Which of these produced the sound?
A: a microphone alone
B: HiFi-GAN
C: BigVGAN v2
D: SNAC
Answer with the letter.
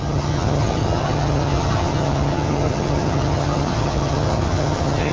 B